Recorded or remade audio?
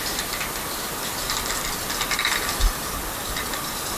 recorded